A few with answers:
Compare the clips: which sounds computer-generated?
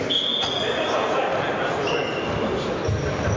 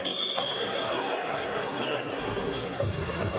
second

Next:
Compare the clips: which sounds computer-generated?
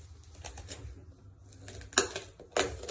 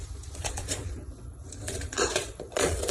second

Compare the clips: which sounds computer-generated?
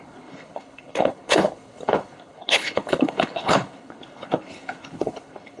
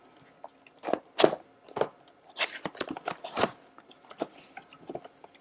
first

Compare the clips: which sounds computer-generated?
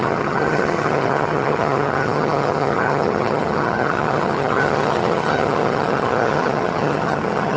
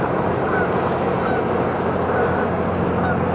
first